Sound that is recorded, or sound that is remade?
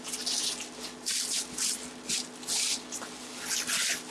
recorded